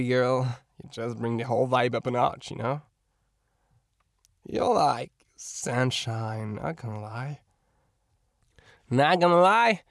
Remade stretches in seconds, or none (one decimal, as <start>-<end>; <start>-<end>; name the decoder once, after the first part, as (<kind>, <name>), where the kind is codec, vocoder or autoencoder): 0.5-2.4 (vocoder, BigVGAN v2); 4.5-8.7